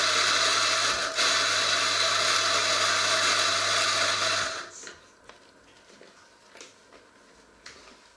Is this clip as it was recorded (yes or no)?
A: yes